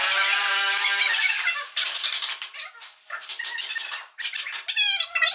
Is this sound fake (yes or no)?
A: no